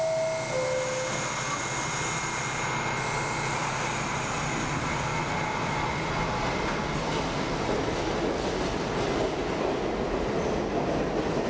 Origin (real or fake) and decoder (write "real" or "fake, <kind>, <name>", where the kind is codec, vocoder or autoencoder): real